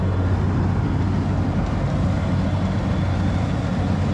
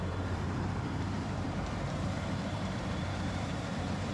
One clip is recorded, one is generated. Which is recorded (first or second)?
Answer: first